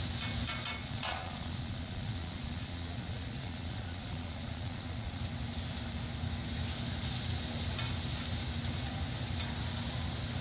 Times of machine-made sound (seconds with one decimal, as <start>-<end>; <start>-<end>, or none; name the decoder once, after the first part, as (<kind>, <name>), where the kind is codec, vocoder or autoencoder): 0.8-5.2 (vocoder, Vocos)